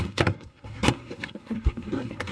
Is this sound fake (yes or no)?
yes